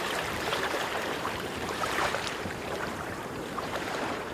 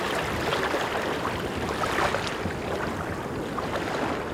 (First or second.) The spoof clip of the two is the first